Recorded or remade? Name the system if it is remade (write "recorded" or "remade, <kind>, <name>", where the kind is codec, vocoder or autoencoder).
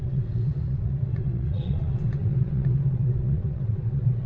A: remade, vocoder, WaveNeXt